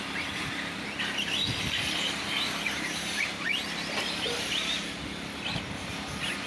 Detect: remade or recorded recorded